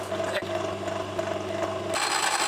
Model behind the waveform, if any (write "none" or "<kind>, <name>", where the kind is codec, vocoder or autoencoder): none